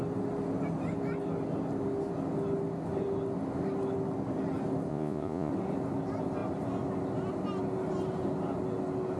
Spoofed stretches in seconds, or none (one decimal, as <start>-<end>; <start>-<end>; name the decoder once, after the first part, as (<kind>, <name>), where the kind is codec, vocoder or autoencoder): 4.9-5.5 (vocoder, Vocos)